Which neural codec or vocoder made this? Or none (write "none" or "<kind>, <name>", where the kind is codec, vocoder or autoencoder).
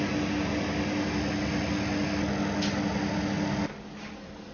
none